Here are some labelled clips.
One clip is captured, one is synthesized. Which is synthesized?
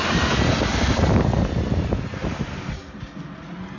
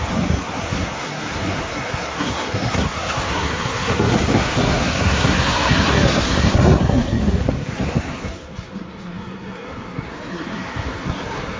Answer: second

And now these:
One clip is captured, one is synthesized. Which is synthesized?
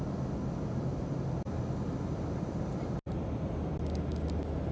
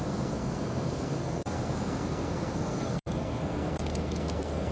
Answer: second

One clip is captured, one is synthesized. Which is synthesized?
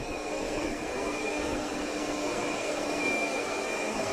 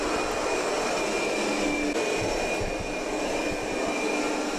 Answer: first